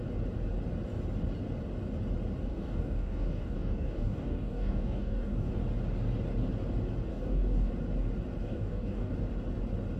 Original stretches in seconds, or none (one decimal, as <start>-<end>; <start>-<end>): 0.0-2.5; 5.5-7.1; 7.7-8.4; 9.1-10.0